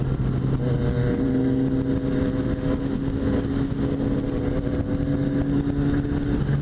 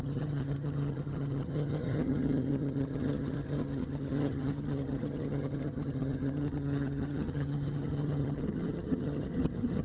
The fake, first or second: second